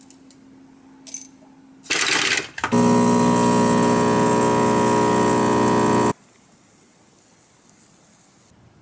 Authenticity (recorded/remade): recorded